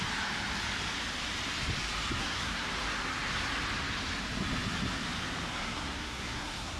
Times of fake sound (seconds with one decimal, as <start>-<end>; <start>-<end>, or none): 2.2-2.7; 5.5-6.8